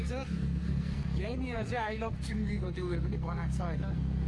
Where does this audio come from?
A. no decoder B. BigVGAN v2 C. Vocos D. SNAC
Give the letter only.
D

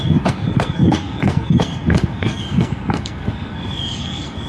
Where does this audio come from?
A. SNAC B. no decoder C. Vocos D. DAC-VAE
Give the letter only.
A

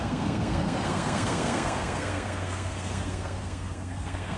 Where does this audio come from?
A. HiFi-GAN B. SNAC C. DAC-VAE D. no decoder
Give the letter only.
B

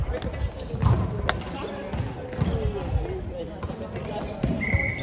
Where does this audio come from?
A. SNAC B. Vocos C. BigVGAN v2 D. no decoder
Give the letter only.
D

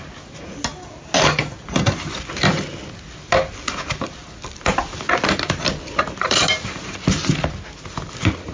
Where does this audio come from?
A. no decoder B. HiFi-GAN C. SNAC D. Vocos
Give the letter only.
A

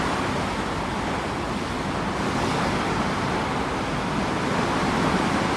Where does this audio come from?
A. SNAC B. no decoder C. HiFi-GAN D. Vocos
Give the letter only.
B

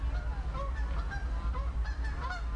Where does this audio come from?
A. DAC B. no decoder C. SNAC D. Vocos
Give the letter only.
B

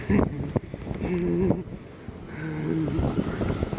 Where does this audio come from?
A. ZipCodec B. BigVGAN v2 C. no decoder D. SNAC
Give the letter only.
C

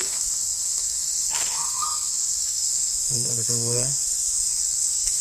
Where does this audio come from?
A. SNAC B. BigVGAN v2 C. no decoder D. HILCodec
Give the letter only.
A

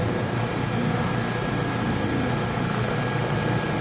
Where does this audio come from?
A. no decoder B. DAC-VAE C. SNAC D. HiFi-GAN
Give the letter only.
A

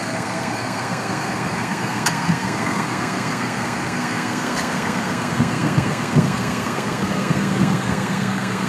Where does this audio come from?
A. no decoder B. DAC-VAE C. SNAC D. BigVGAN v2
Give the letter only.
C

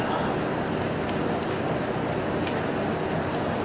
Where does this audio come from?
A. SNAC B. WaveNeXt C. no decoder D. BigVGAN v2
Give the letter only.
C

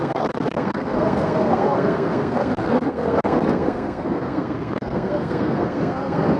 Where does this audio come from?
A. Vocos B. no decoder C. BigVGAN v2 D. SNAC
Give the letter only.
D